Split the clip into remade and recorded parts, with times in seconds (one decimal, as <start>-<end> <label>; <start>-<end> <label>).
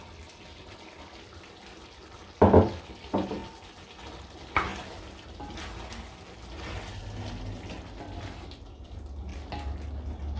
0.0-10.4 recorded